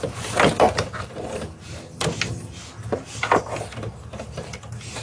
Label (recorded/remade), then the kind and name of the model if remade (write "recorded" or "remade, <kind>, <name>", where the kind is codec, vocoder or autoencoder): recorded